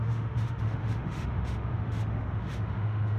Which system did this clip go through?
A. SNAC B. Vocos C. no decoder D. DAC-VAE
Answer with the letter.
D